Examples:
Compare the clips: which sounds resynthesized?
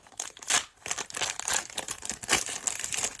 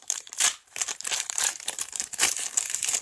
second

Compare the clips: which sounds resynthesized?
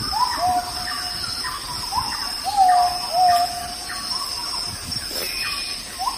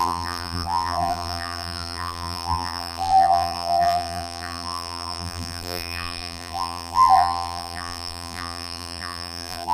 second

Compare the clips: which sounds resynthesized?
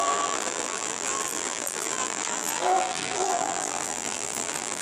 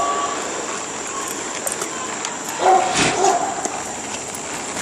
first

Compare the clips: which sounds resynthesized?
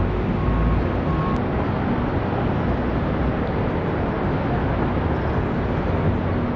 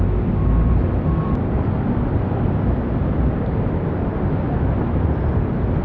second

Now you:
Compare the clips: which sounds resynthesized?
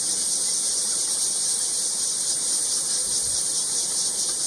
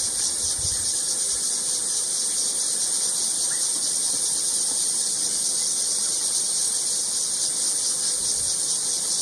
first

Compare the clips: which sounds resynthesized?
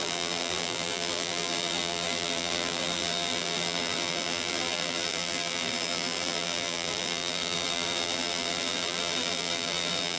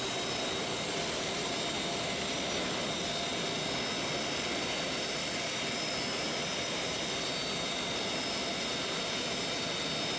first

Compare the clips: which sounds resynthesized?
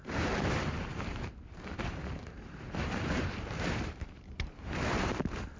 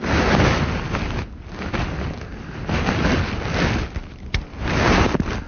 first